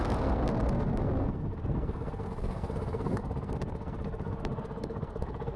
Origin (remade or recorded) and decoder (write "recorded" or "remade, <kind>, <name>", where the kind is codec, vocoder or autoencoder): remade, codec, SNAC